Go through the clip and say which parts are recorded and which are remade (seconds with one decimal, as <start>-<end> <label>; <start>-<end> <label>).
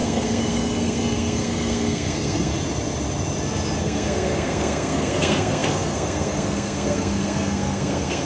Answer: 0.0-2.5 remade; 2.5-3.8 recorded; 3.8-8.3 remade